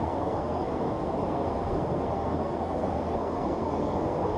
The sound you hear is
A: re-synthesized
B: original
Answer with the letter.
A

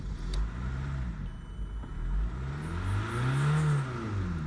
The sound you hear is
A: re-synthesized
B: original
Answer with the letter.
B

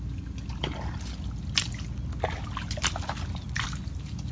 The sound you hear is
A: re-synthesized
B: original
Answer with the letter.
B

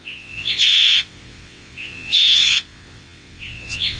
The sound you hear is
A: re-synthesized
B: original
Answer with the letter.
A